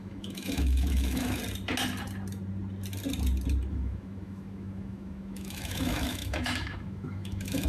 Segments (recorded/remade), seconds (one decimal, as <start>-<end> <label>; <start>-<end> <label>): 0.0-1.4 remade; 1.4-3.7 recorded; 3.7-7.7 remade